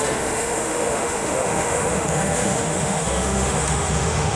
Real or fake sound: fake